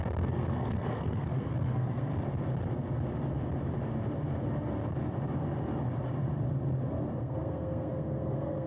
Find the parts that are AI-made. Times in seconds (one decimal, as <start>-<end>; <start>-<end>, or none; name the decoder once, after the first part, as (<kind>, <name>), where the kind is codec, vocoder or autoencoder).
0.0-2.1 (codec, SNAC); 7.2-8.7